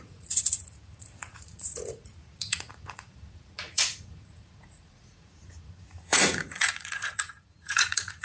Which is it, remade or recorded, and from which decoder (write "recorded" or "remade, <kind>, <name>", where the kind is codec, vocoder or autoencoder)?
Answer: remade, vocoder, Vocos